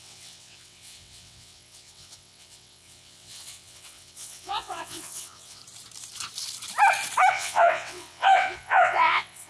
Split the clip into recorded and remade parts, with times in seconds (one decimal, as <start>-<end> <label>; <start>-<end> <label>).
0.0-5.6 remade; 5.6-7.3 recorded; 7.3-9.5 remade